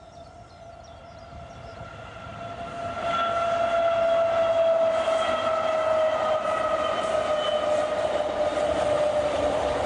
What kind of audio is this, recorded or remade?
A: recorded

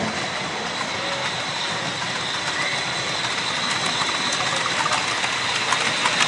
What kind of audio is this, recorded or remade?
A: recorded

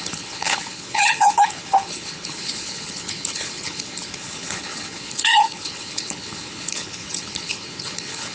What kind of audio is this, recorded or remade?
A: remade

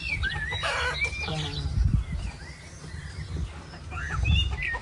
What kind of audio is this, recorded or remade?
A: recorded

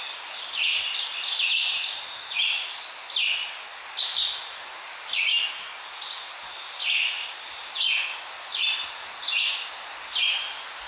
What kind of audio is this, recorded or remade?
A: recorded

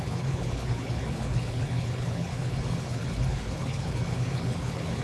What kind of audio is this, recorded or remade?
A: remade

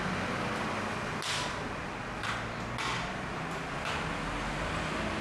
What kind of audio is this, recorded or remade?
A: recorded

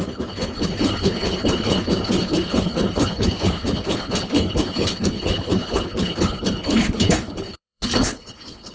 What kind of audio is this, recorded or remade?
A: remade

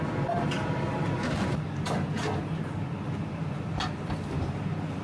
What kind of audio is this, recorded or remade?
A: recorded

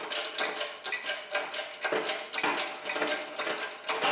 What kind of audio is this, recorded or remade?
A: recorded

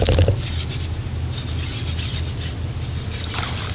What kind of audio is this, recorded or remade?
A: recorded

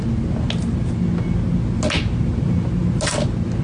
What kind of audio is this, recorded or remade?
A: recorded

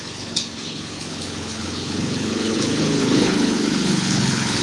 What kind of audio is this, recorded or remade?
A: remade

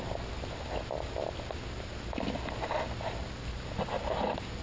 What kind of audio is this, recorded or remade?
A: recorded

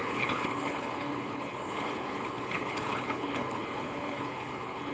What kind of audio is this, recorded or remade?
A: remade